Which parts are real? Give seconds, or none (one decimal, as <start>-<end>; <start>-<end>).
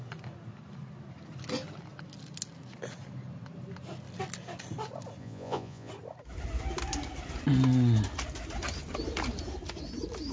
0.0-5.2; 5.9-10.3